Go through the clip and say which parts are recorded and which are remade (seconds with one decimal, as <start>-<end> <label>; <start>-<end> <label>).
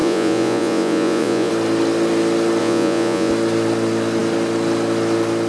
0.0-1.5 remade; 1.5-2.6 recorded; 2.6-3.3 remade; 3.3-5.5 recorded